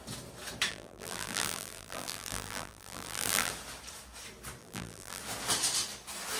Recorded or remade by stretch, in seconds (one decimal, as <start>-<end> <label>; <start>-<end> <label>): 0.0-0.7 recorded; 0.7-3.5 remade; 3.5-4.6 recorded; 4.6-5.2 remade; 5.2-6.4 recorded